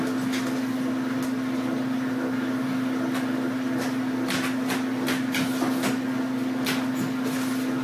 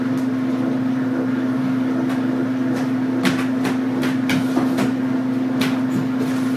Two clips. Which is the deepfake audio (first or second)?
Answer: second